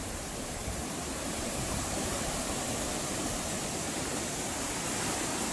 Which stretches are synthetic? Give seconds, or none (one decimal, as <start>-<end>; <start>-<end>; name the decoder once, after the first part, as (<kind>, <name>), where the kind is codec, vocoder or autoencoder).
0.0-2.1 (vocoder, BigVGAN v2)